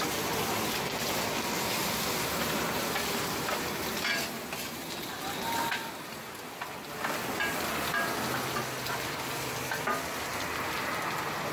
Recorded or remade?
recorded